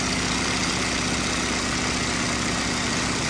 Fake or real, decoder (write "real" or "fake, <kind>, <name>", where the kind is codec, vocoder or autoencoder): real